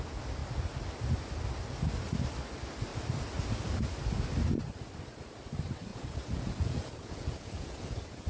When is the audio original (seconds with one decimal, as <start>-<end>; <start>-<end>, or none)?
0.0-5.9